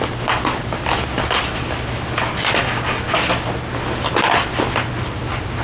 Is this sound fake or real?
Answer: real